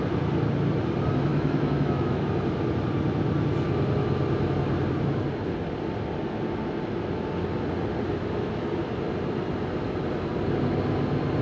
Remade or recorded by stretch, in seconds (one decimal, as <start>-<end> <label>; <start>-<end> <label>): 0.0-1.3 recorded; 1.3-2.2 remade; 2.2-11.4 recorded